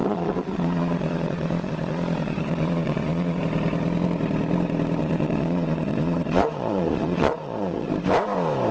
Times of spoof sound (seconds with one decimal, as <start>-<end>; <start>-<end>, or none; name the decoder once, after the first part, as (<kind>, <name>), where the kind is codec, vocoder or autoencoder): 0.0-3.4 (vocoder, Vocos); 5.0-7.9

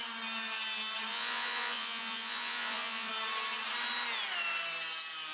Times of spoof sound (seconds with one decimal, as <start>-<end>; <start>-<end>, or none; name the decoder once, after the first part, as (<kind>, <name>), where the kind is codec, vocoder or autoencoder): 1.1-3.1 (vocoder, Vocos)

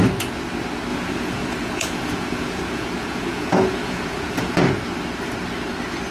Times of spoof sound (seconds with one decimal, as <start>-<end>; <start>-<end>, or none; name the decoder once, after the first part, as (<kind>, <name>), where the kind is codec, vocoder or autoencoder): 0.9-4.6 (vocoder, Vocos)